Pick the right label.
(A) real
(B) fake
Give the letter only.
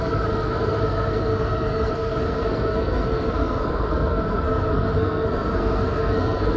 B